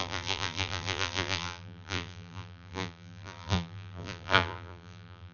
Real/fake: fake